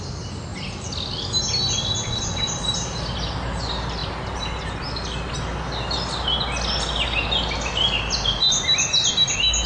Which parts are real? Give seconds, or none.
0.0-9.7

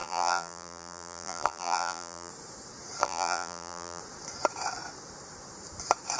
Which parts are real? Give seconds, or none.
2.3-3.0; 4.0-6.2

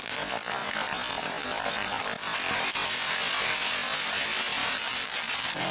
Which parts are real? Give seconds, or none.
0.0-4.6